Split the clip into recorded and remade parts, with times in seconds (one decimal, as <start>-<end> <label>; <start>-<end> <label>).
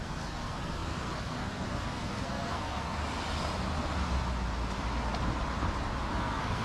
0.0-3.0 remade; 3.0-6.1 recorded; 6.1-6.6 remade